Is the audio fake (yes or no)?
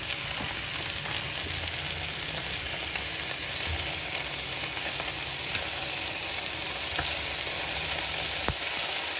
no